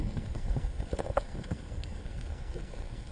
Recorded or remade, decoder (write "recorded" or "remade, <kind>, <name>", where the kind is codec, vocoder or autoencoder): remade, codec, SNAC